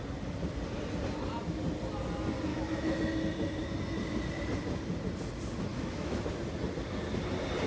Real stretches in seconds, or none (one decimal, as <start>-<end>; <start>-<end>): 0.0-2.5; 3.0-5.7; 6.2-7.7